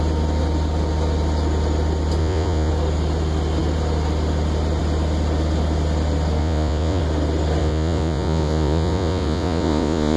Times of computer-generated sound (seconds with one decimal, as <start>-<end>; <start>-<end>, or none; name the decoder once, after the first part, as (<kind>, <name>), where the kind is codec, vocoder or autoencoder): 2.2-2.7 (vocoder, Vocos); 6.4-7.0; 7.6-10.2